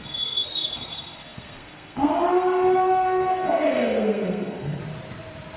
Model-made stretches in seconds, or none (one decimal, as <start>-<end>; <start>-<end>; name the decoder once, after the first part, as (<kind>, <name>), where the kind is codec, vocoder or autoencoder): 0.0-4.8 (codec, SNAC)